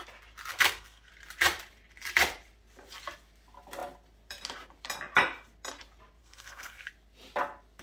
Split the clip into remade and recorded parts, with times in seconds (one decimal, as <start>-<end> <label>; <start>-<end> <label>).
0.0-0.5 recorded; 0.5-1.1 remade; 1.1-6.2 recorded; 6.2-6.9 remade; 6.9-7.8 recorded